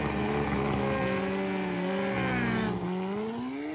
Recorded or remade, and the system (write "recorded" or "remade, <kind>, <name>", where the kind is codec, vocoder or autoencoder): recorded